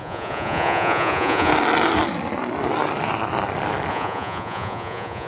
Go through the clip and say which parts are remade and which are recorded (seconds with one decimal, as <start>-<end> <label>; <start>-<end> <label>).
0.0-1.5 remade; 1.5-3.9 recorded; 3.9-5.3 remade